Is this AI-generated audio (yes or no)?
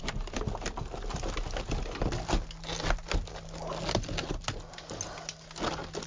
no